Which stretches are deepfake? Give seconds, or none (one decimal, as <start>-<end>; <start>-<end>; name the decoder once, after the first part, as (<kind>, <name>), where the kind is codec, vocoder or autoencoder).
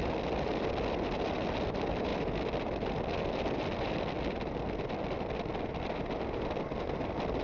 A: none